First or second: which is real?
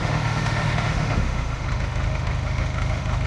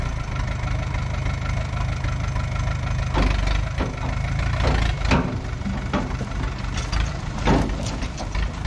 second